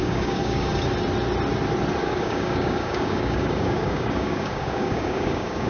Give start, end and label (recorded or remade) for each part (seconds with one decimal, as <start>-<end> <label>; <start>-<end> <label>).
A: 0.0-0.7 remade; 0.7-2.0 recorded; 2.0-5.7 remade